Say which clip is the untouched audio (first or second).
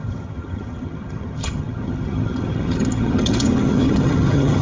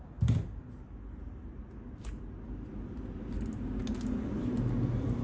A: second